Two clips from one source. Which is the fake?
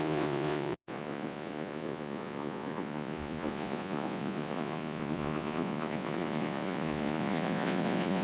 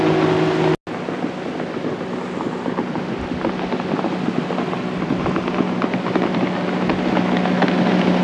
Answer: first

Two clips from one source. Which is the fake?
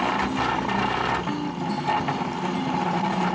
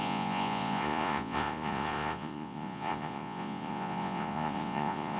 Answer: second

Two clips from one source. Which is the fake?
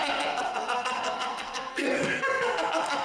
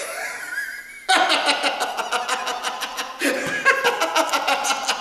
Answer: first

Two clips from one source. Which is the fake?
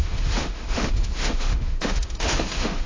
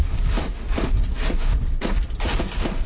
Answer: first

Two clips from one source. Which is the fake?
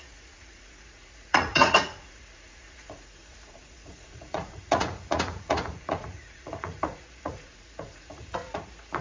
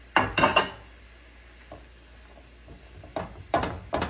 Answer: first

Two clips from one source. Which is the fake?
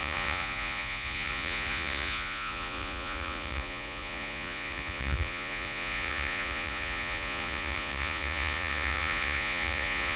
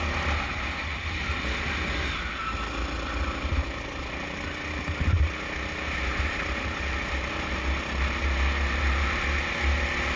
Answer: first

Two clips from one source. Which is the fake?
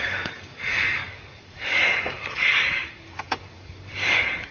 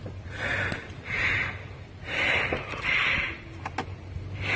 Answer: first